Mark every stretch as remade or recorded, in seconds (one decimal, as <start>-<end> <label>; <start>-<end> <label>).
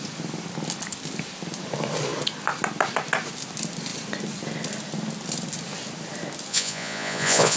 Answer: 0.0-6.5 recorded; 6.5-7.6 remade